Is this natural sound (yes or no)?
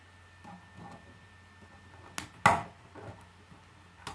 yes